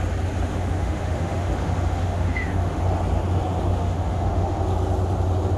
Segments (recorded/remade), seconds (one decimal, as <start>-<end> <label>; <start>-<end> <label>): 0.0-0.5 recorded; 0.5-2.8 remade; 2.8-3.7 recorded; 3.7-4.6 remade; 4.6-5.6 recorded